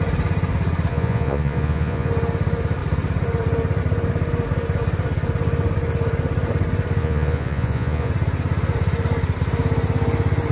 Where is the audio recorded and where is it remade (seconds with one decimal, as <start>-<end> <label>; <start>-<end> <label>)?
0.0-0.9 recorded; 0.9-2.1 remade; 2.1-7.0 recorded; 7.0-8.1 remade; 8.1-10.5 recorded